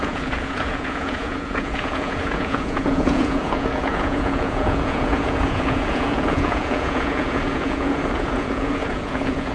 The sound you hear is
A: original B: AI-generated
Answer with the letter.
B